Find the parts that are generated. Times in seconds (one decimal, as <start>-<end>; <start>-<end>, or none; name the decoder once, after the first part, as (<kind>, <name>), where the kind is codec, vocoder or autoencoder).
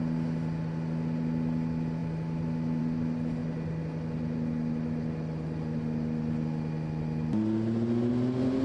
none